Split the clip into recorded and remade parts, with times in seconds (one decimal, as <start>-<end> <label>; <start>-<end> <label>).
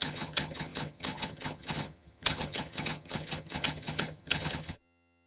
0.0-5.3 remade